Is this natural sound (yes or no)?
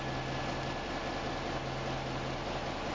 yes